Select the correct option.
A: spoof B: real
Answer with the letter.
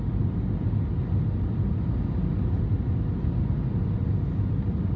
B